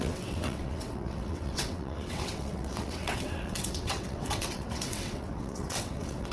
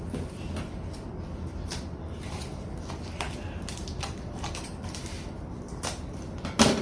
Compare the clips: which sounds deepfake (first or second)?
first